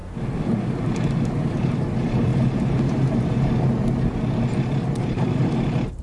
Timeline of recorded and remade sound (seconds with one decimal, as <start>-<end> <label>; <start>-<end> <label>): 0.0-1.6 recorded; 1.6-2.3 remade; 2.3-5.0 recorded; 5.0-6.0 remade